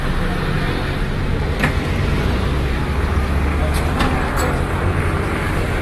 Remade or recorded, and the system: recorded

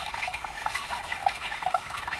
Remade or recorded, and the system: remade, autoencoder, DAC-VAE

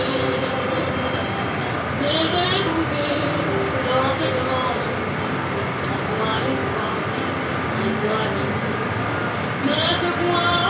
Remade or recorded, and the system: recorded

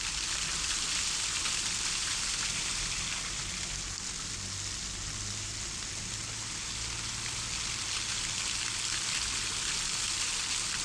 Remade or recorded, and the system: recorded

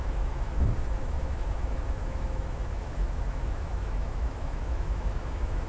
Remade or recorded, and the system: remade, autoencoder, DAC-VAE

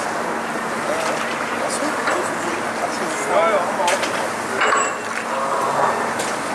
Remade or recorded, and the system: recorded